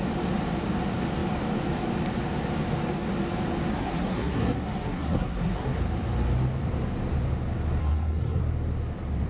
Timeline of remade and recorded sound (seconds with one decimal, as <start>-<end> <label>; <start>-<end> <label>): 0.0-3.7 recorded; 3.7-5.8 remade; 5.8-7.8 recorded; 7.8-8.4 remade; 8.4-9.3 recorded